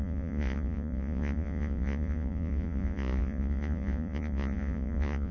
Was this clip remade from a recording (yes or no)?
yes